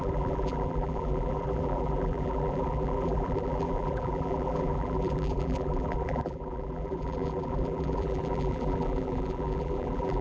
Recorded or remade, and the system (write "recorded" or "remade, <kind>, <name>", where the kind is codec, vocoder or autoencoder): remade, vocoder, BigVGAN v2